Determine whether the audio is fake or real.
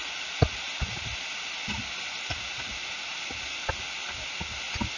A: real